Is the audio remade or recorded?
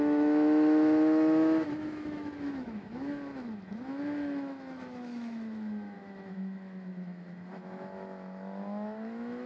remade